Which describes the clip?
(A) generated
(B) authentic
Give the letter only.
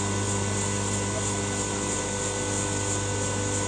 B